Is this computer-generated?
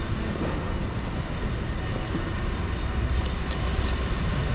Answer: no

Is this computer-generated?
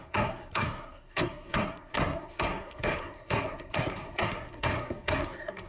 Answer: yes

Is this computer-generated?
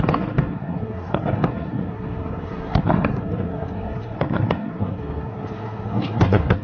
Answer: yes